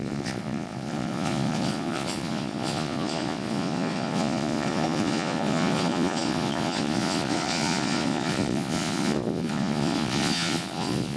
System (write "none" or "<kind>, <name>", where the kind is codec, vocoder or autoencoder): vocoder, Vocos